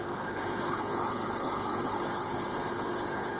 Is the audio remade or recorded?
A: remade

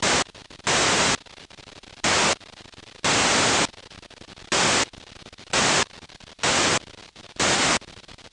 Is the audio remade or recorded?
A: recorded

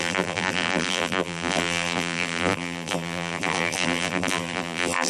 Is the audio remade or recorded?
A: remade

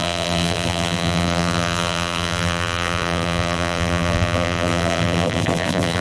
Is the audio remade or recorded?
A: remade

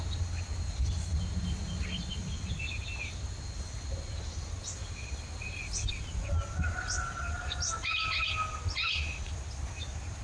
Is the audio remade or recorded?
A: recorded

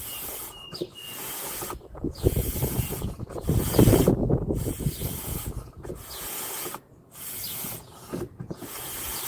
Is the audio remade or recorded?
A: remade